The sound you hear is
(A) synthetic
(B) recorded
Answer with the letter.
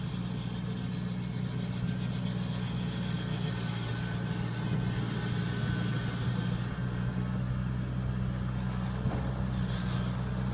B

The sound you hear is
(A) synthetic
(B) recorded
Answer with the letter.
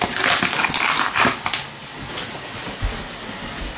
B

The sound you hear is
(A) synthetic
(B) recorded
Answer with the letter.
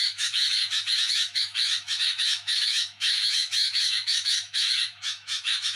A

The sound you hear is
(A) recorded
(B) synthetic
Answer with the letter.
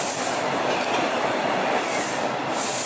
A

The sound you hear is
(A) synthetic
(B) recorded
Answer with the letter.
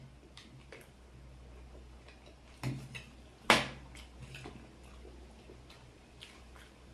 B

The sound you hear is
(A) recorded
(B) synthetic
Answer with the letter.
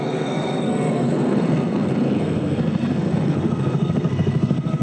B